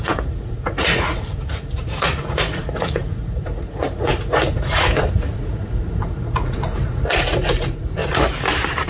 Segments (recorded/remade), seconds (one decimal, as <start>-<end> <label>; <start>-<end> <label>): 0.0-8.0 remade; 8.0-8.9 recorded